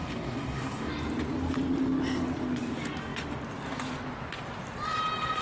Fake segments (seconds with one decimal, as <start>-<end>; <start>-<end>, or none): 0.0-0.9